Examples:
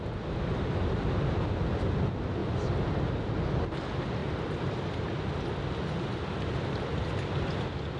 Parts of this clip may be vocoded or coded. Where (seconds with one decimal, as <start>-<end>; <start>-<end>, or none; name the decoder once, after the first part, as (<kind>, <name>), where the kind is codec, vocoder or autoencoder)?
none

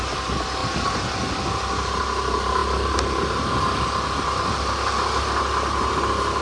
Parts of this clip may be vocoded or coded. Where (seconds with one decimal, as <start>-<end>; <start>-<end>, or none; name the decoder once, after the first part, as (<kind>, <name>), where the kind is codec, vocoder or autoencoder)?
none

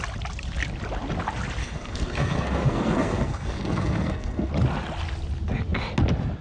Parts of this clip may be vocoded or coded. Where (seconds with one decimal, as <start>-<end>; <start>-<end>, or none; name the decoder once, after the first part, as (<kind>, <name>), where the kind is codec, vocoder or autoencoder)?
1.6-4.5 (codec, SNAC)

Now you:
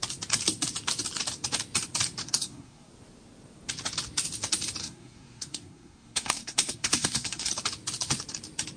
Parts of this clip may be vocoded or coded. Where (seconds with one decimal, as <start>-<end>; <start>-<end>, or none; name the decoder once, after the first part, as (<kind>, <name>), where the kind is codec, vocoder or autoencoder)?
2.2-2.9 (codec, SNAC); 4.8-7.5

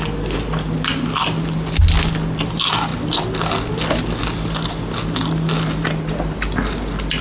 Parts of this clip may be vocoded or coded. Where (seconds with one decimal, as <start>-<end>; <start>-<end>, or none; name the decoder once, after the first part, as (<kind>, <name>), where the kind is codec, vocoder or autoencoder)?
none

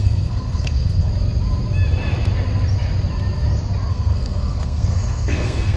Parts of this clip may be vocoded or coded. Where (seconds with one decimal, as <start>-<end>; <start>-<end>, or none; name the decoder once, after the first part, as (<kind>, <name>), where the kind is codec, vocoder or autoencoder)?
0.0-1.1 (codec, SNAC); 3.9-5.8